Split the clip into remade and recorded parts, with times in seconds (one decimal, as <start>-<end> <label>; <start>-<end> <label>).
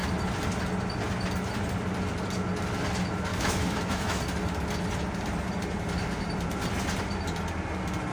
0.0-3.3 recorded; 3.3-4.2 remade; 4.2-8.1 recorded